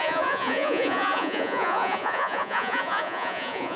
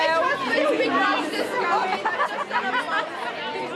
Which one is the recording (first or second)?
second